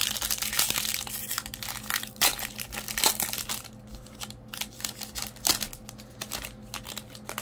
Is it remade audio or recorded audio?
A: recorded